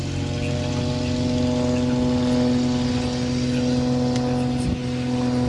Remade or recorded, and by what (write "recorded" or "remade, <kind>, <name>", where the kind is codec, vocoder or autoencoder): recorded